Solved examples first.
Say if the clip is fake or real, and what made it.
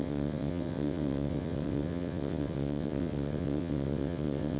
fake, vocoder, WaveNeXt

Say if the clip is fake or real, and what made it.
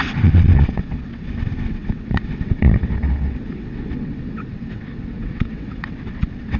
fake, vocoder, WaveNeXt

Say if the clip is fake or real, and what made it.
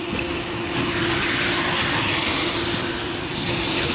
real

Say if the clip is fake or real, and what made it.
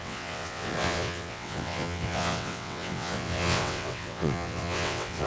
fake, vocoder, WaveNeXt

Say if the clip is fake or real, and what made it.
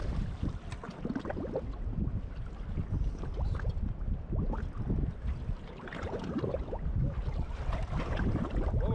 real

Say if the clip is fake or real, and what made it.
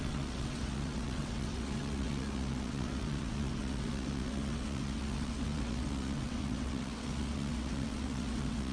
fake, vocoder, WaveNeXt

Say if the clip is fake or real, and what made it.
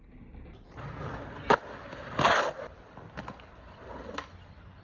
real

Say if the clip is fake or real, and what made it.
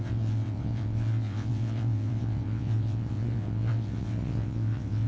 fake, vocoder, WaveNeXt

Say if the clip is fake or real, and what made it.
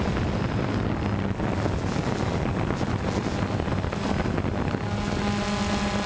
real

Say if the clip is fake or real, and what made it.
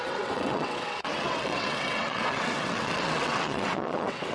fake, vocoder, WaveNeXt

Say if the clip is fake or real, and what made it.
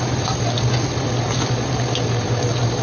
real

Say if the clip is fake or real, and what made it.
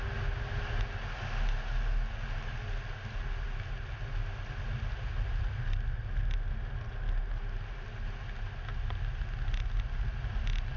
real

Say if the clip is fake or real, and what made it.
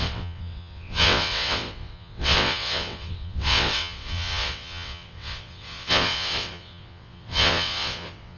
fake, vocoder, WaveNeXt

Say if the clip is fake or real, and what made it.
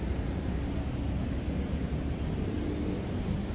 real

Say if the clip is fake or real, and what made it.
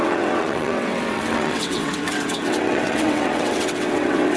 fake, vocoder, WaveNeXt